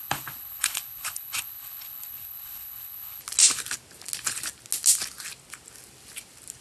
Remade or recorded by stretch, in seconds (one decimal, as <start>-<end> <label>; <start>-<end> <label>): 0.0-3.2 remade; 3.2-6.6 recorded